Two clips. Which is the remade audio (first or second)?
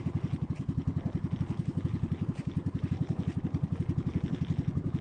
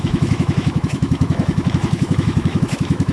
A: second